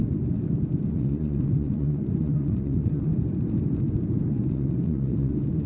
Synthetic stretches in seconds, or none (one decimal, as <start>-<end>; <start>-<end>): 0.9-3.1; 4.3-5.7